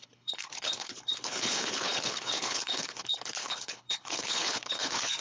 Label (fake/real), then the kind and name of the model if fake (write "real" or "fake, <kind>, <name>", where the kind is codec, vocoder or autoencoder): fake, codec, HILCodec